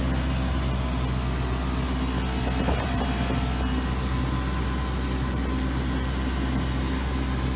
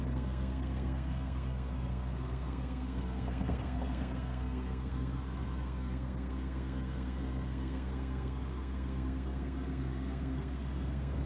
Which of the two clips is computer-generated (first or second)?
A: second